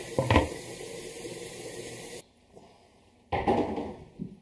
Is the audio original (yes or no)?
no